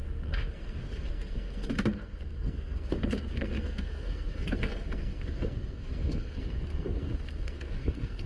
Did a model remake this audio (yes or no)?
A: yes